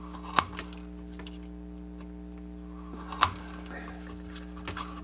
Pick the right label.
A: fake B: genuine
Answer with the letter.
B